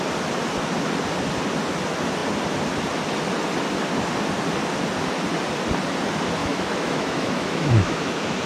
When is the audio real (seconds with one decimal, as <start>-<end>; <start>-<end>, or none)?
0.0-6.4